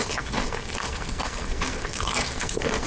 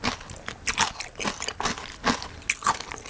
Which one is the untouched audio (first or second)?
second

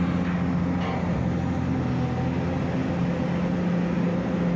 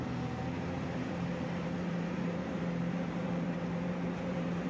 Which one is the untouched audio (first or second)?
first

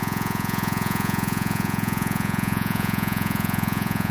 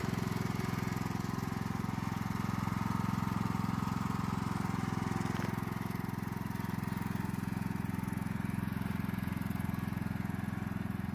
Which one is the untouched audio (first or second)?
second